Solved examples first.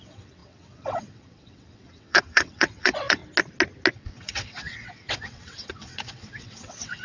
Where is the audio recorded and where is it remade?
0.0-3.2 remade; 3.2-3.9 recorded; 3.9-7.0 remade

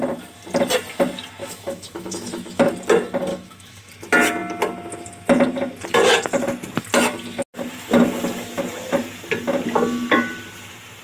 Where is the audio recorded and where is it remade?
0.0-1.4 recorded; 1.4-2.7 remade; 2.7-3.3 recorded; 3.3-3.9 remade; 3.9-11.0 recorded

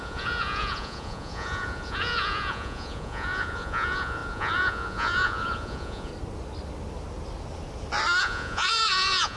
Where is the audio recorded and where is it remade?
0.0-6.1 remade; 6.1-8.2 recorded; 8.2-9.4 remade

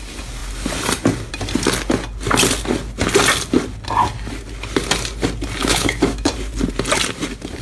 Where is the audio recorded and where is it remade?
0.0-5.6 recorded; 5.6-6.3 remade; 6.3-7.6 recorded

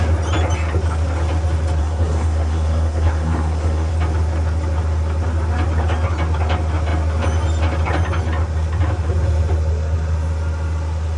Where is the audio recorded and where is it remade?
0.0-1.8 recorded; 1.8-3.9 remade; 3.9-11.2 recorded

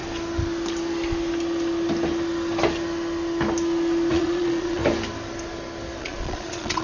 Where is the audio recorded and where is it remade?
0.0-4.1 recorded; 4.1-4.8 remade; 4.8-6.0 recorded; 6.0-6.8 remade

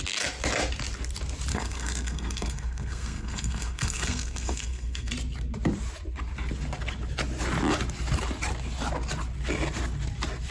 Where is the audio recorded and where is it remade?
0.0-1.5 recorded; 1.5-5.1 remade; 5.1-10.5 recorded